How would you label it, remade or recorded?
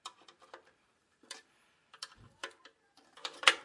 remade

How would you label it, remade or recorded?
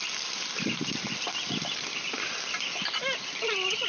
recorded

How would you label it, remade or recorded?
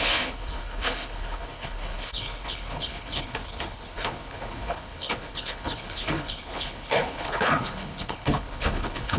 remade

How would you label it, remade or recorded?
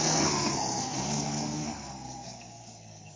remade